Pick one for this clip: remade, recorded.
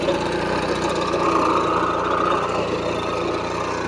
recorded